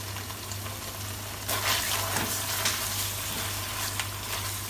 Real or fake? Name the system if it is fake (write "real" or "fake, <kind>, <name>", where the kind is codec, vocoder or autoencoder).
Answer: real